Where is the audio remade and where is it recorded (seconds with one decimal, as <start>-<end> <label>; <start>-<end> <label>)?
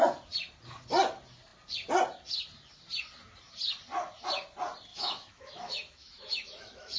0.0-4.9 recorded; 4.9-7.0 remade